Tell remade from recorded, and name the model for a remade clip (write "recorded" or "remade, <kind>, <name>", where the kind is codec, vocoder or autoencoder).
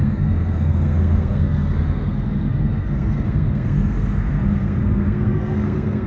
remade, codec, SNAC